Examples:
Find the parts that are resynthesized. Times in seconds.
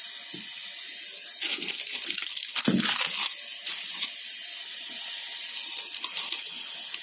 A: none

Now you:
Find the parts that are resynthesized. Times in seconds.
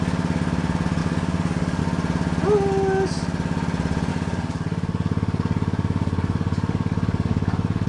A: 1.0-1.8 (codec, DAC); 4.1-7.9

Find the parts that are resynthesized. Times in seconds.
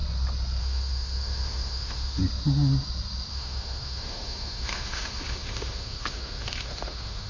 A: 0.6-2.2 (autoencoder, DAC-VAE); 3.3-7.3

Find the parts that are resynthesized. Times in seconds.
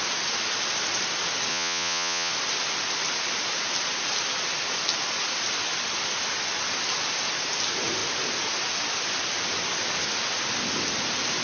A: 1.5-2.3 (vocoder, Vocos)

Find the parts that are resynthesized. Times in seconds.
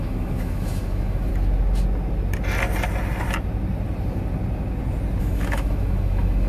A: 0.0-1.3 (autoencoder, DAC-VAE); 5.2-6.5